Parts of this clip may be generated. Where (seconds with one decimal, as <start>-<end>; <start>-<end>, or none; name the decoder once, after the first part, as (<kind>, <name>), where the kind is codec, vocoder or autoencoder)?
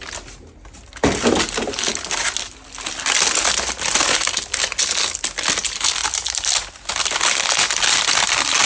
none